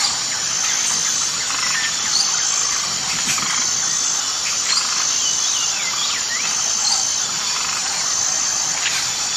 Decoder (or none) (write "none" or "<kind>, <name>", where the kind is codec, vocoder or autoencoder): none